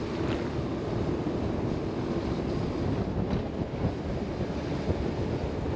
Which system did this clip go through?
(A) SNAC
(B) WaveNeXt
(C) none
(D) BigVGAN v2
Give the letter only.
C